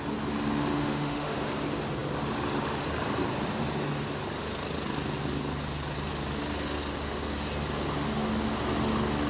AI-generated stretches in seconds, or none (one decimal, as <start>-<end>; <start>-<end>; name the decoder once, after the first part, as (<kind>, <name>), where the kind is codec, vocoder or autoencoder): 0.7-1.5 (autoencoder, DAC-VAE)